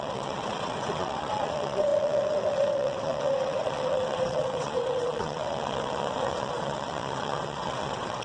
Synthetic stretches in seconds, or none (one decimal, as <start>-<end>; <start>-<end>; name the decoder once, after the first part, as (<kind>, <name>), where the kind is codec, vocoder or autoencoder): 0.0-8.2 (vocoder, WaveNeXt)